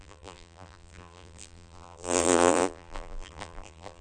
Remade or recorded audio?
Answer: remade